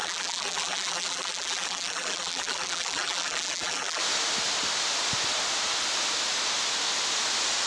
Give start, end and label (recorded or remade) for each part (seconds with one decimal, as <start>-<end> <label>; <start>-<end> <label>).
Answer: 0.0-4.0 remade; 4.0-7.7 recorded